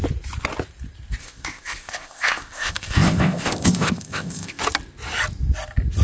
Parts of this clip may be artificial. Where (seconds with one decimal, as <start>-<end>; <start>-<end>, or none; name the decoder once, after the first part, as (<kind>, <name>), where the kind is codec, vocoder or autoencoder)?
1.2-4.6 (codec, ZipCodec)